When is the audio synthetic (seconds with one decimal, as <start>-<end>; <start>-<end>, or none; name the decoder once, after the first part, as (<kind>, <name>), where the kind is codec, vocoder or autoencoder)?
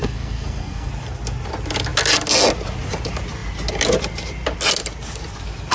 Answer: 0.0-0.9 (codec, SNAC)